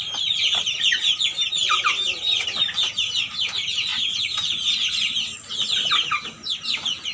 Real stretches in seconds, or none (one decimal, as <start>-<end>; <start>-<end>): 0.0-7.1